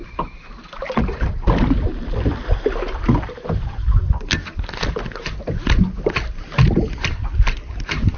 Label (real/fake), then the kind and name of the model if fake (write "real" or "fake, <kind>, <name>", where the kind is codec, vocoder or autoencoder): real